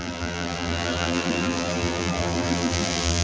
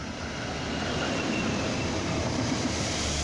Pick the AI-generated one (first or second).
first